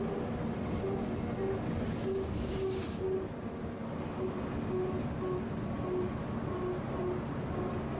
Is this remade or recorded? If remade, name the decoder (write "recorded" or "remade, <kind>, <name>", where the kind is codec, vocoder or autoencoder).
recorded